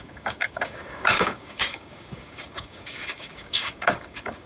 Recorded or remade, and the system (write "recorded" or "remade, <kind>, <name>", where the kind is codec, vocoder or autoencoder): remade, codec, DAC